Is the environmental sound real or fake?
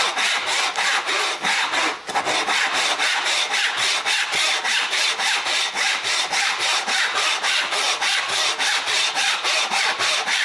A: real